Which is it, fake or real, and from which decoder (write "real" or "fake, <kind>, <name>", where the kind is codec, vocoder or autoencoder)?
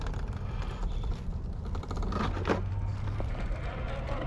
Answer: real